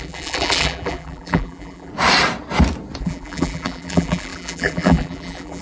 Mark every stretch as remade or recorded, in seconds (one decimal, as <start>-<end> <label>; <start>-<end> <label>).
0.0-1.9 remade; 1.9-3.0 recorded; 3.0-5.6 remade